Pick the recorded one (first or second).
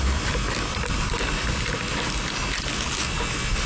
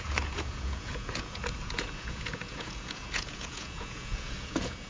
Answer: first